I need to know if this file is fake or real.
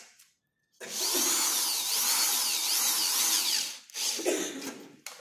real